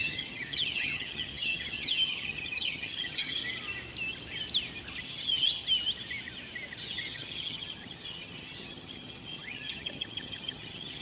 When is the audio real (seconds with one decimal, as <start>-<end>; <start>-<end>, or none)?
3.4-5.0; 5.6-6.8